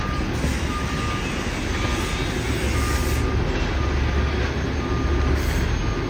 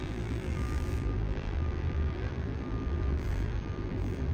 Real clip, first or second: first